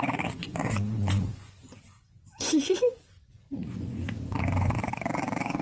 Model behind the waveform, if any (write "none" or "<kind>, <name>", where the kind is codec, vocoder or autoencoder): vocoder, Vocos